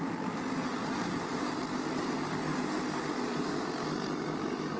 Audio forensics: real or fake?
real